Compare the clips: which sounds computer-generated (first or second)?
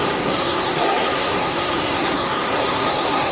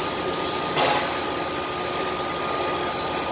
first